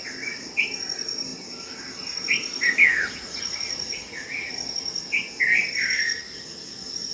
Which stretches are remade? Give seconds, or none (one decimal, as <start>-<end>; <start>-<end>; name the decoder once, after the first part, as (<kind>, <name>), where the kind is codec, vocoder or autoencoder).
2.9-4.5 (vocoder, Vocos)